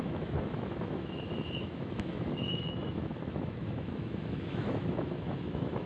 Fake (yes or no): yes